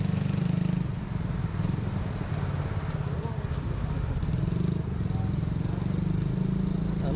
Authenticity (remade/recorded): recorded